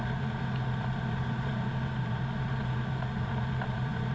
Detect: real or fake fake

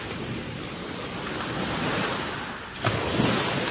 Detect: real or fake real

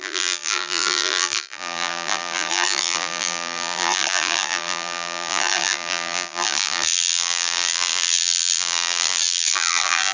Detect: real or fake fake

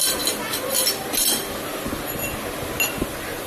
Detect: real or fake real